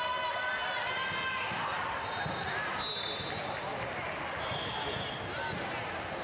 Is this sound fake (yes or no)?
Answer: no